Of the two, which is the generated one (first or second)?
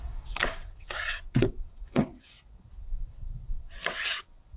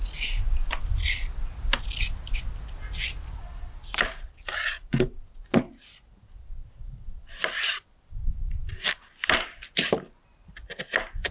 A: first